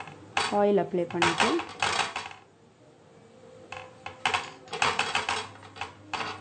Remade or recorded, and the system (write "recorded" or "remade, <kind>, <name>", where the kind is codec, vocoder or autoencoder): recorded